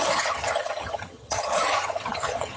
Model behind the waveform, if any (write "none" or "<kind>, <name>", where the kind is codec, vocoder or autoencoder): vocoder, HiFi-GAN